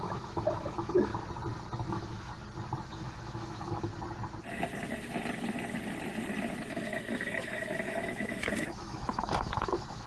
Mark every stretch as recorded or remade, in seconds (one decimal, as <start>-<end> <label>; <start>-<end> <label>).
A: 0.0-1.1 remade; 1.1-1.9 recorded; 1.9-2.3 remade; 2.3-2.9 recorded; 2.9-3.9 remade; 3.9-6.7 recorded; 6.7-10.1 remade